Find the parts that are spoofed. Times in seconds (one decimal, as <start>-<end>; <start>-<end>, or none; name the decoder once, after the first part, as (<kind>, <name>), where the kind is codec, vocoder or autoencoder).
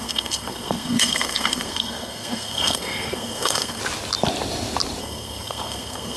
0.0-3.8 (codec, SNAC); 5.0-6.2